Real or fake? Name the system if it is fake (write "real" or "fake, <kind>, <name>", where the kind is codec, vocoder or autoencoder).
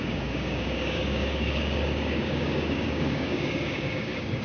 fake, codec, DAC